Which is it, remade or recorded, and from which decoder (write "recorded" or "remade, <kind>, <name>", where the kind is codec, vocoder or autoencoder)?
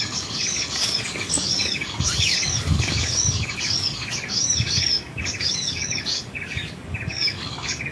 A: remade, codec, DAC